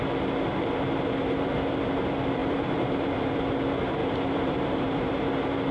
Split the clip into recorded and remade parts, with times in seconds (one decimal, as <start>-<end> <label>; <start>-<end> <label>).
0.0-2.4 recorded; 2.4-3.4 remade; 3.4-4.0 recorded; 4.0-5.1 remade; 5.1-5.7 recorded